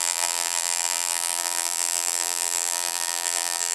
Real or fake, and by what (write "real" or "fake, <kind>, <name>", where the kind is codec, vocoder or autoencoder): fake, vocoder, BigVGAN v2